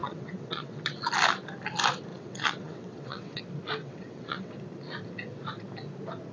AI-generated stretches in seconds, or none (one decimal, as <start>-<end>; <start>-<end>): 0.0-0.9; 2.1-3.4; 3.8-4.5